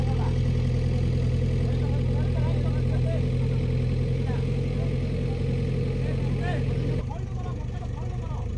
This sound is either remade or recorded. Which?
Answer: recorded